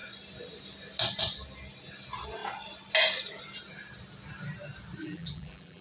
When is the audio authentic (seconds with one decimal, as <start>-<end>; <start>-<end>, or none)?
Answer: 0.0-5.0